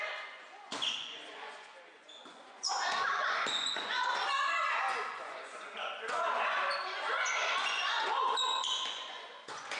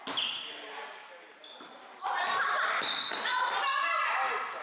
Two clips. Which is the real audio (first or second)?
second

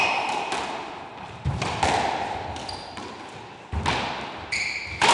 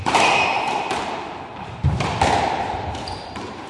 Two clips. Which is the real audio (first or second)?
first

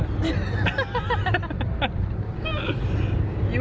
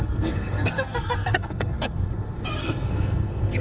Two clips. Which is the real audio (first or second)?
first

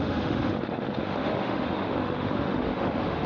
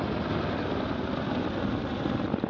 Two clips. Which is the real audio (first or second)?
second